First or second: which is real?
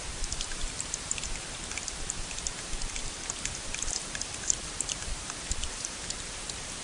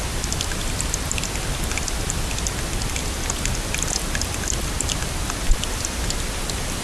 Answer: second